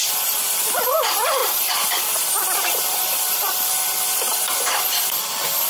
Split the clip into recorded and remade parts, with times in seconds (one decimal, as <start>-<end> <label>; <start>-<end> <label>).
0.0-1.4 recorded; 1.4-4.4 remade; 4.4-5.7 recorded